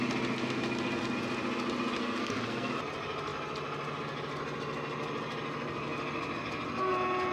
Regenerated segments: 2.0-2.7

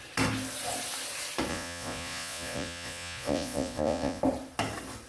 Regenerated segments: 1.5-4.2